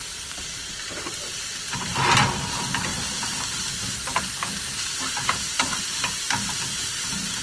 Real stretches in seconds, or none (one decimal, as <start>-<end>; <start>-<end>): 0.0-7.4